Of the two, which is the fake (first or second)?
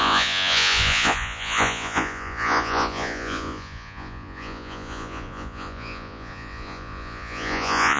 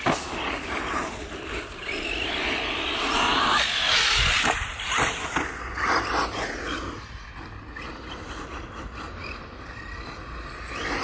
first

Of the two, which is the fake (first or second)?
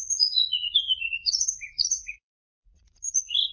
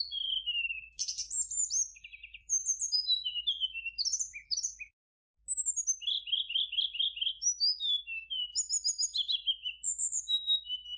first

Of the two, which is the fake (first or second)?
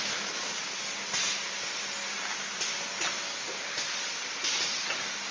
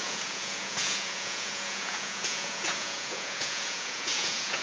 second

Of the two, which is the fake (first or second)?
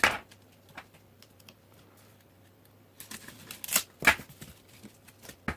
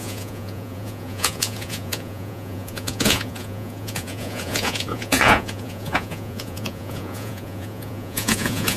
second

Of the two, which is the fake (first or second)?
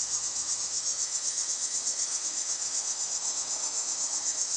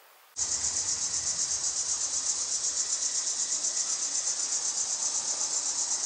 first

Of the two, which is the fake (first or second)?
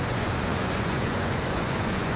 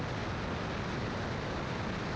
first